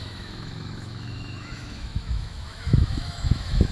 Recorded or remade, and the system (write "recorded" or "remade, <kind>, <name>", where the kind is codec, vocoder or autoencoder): remade, autoencoder, DAC-VAE